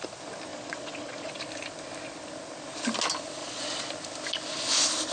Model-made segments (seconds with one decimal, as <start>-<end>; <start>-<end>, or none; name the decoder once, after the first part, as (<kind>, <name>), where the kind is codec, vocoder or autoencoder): 0.5-1.3 (vocoder, Vocos); 3.4-3.9